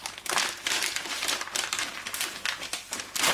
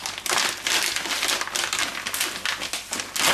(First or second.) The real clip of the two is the second